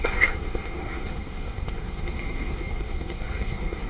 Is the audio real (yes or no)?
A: no